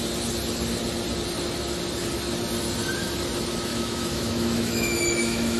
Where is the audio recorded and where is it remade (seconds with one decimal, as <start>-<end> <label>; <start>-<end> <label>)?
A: 0.0-3.7 recorded; 3.7-5.6 remade